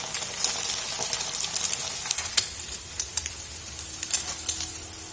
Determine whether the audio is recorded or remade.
recorded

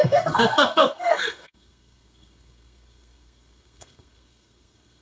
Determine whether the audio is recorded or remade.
remade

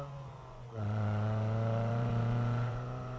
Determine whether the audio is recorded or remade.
remade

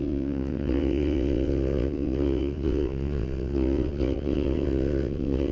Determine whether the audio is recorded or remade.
remade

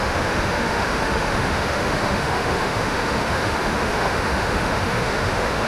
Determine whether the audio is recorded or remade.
remade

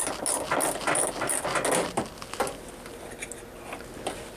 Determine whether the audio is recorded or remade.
recorded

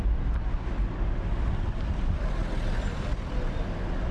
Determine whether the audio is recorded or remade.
recorded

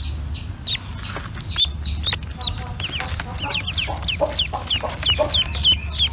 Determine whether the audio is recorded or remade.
recorded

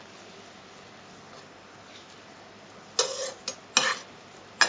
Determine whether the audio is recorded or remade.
recorded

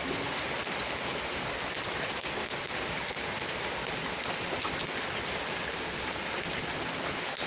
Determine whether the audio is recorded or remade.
recorded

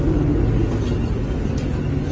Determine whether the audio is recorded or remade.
recorded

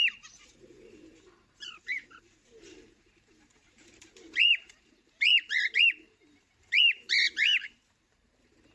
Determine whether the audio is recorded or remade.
remade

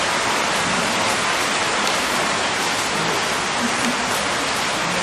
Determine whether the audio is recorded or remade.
recorded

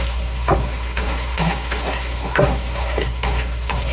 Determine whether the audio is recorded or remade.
remade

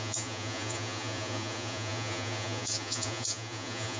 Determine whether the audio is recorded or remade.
remade